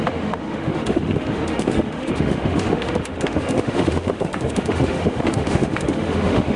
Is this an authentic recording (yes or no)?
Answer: no